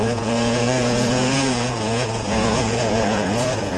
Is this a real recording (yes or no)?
no